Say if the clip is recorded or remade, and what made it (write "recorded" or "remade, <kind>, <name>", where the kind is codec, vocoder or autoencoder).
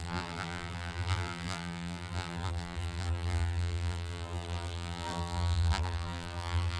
remade, vocoder, BigVGAN v2